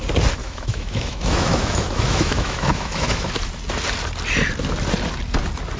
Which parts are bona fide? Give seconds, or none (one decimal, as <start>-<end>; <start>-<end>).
0.0-0.4; 3.3-5.8